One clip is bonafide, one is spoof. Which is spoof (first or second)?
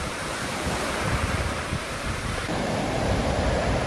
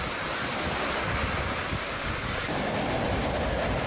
first